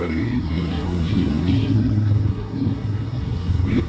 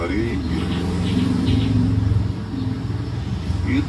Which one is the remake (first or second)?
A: first